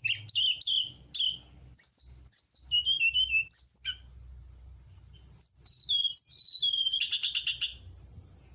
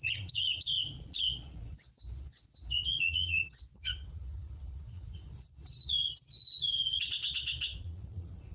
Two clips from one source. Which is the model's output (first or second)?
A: second